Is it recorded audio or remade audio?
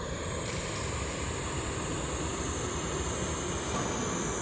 recorded